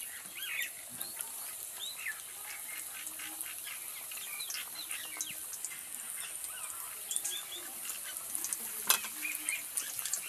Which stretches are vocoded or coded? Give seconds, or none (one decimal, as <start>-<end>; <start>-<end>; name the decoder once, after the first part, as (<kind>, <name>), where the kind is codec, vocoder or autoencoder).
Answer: 1.1-1.8 (vocoder, BigVGAN v2)